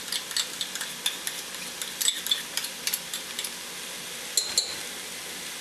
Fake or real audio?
real